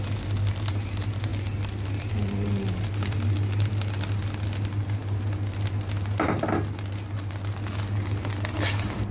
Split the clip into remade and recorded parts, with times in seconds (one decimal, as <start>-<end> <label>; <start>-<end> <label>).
0.0-9.1 recorded